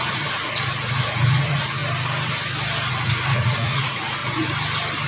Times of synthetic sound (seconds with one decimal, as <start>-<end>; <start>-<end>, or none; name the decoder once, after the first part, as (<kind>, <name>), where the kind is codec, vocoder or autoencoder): 0.0-1.8 (vocoder, Vocos); 2.9-4.2